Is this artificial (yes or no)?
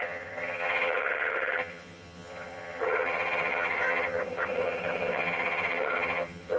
yes